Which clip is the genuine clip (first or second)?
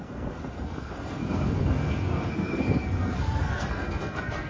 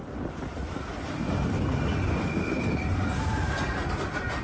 second